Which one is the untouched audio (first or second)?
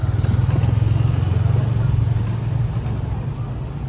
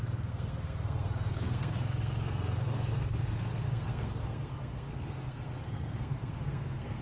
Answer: first